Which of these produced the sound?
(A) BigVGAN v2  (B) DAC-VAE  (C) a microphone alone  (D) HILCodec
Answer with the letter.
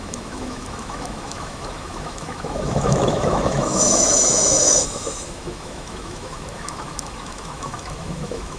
B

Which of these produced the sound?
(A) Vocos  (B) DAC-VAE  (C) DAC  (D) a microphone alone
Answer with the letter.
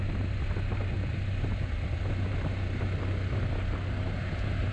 D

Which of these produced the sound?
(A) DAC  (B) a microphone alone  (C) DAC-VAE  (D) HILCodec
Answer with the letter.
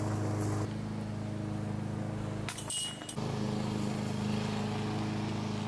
B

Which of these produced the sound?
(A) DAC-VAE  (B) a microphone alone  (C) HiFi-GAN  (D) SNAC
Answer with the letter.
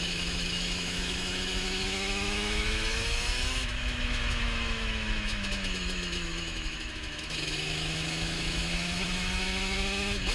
A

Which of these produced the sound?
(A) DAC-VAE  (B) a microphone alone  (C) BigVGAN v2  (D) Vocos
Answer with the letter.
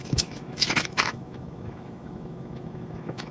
A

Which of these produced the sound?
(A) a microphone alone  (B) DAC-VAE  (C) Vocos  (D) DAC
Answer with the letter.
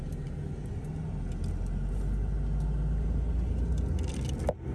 A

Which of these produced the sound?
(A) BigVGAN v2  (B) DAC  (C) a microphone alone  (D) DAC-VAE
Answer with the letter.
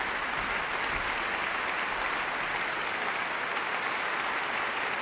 C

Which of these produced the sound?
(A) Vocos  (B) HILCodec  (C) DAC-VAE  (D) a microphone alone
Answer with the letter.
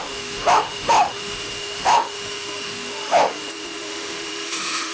C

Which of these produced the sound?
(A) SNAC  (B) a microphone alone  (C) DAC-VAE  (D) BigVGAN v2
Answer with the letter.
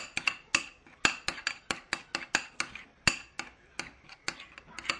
B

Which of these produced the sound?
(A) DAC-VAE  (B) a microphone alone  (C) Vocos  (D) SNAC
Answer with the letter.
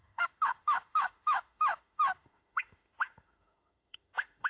A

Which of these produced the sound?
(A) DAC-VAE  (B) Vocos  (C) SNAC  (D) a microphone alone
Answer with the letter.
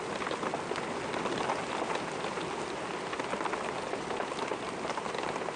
D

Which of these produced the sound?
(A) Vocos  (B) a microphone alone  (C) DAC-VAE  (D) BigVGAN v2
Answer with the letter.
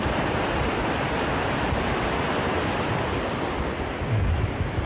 B